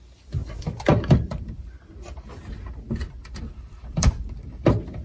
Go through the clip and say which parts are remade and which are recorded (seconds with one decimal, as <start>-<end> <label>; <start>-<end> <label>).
0.0-5.0 remade